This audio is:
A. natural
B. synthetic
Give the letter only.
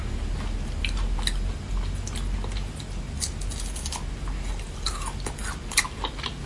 A